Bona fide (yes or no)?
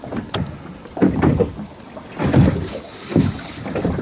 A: yes